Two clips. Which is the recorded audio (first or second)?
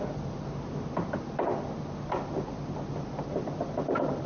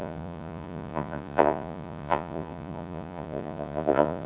first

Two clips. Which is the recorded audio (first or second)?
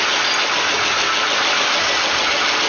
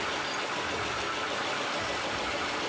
first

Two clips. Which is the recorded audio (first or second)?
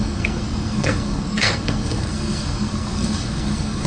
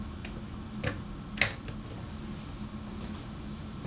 second